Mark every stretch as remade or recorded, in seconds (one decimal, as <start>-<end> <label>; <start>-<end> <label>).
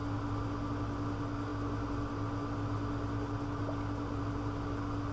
0.0-5.1 recorded